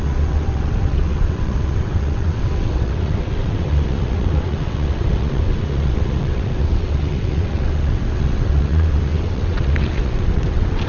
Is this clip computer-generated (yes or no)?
yes